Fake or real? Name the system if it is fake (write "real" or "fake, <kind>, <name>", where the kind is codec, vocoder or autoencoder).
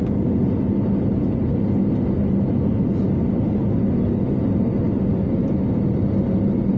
real